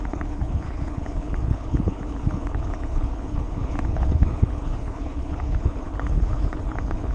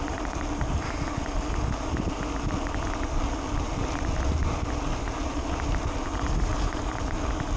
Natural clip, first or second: second